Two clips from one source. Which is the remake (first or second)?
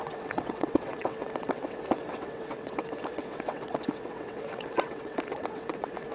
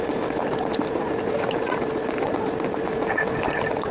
first